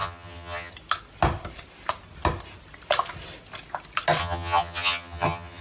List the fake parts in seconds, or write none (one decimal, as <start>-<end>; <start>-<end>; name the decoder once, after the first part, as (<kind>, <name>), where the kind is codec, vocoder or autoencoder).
0.0-0.7 (vocoder, HiFi-GAN); 4.2-5.6